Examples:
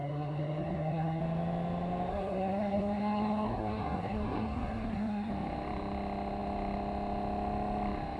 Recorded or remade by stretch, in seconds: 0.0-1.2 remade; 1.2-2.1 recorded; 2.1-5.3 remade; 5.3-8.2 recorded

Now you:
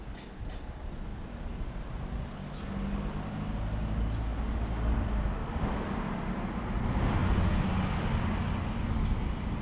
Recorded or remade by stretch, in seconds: 0.0-9.6 recorded

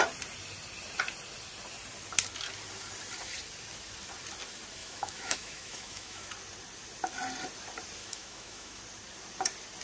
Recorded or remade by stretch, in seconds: 0.0-4.8 recorded; 4.8-6.3 remade; 6.3-8.0 recorded; 8.0-8.8 remade; 8.8-9.8 recorded

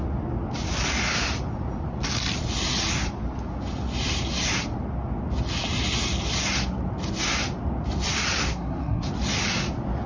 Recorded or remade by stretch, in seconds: 0.0-8.4 recorded; 8.4-9.1 remade; 9.1-10.1 recorded

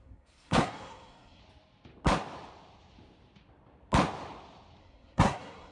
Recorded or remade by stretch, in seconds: 0.0-1.4 remade; 1.4-4.8 recorded; 4.8-5.7 remade

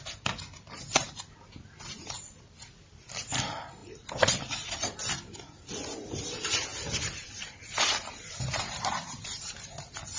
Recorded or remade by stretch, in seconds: 0.0-3.8 recorded; 3.8-5.1 remade; 5.1-6.7 recorded; 6.7-9.5 remade; 9.5-10.2 recorded